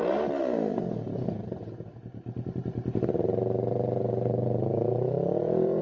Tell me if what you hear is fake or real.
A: fake